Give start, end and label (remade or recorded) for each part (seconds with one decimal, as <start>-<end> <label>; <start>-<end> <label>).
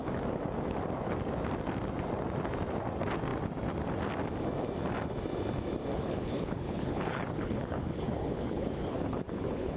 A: 0.0-5.9 recorded; 5.9-9.8 remade